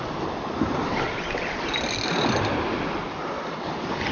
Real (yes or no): yes